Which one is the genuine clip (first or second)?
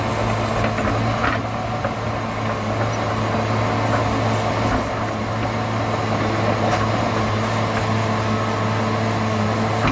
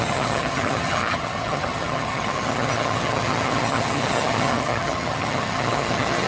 first